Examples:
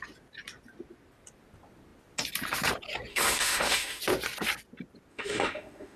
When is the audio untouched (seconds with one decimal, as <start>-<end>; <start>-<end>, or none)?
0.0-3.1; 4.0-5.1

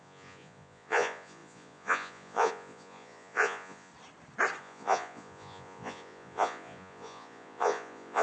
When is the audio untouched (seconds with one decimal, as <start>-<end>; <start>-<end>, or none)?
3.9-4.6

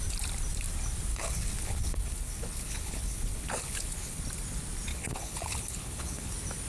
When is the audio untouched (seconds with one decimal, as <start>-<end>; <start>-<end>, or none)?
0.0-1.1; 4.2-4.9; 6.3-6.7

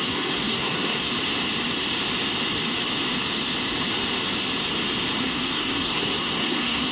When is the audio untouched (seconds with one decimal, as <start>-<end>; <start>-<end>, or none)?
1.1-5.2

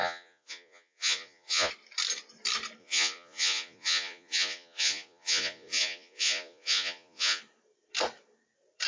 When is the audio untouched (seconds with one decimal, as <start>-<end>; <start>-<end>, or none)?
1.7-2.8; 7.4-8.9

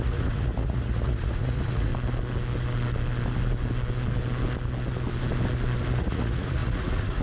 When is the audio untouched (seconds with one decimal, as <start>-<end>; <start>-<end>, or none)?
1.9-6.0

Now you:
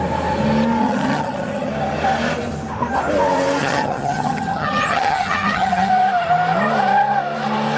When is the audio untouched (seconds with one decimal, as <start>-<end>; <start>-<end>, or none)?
0.0-0.8; 1.7-3.6; 5.9-7.8